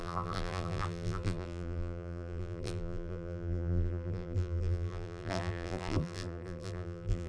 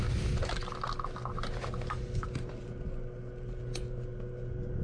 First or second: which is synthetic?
first